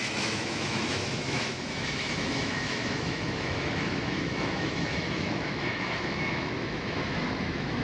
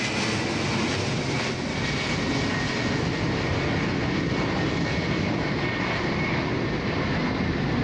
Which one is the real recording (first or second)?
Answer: second